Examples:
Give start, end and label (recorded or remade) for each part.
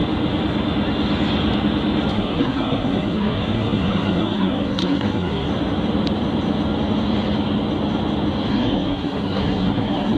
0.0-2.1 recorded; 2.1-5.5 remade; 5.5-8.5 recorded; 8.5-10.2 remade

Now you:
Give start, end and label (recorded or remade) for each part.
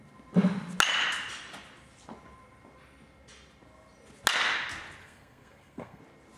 0.0-5.0 recorded; 5.0-6.0 remade; 6.0-6.4 recorded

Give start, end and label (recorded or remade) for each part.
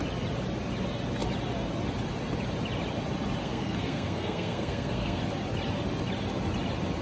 0.0-3.4 recorded; 3.4-5.2 remade; 5.2-7.0 recorded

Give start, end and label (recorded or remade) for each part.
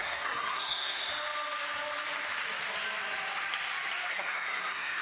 0.0-1.1 remade; 1.1-4.1 recorded; 4.1-5.0 remade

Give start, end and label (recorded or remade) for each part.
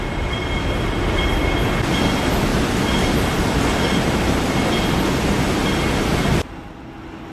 0.0-7.3 recorded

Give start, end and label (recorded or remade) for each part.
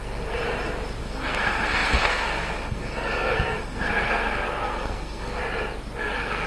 0.0-0.4 remade; 0.4-1.0 recorded; 1.0-5.4 remade; 5.4-6.0 recorded; 6.0-6.5 remade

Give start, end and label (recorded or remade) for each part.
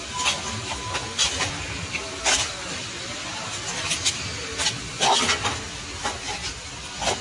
0.0-7.2 recorded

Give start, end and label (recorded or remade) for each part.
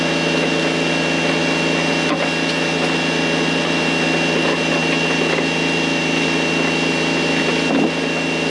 0.0-8.5 recorded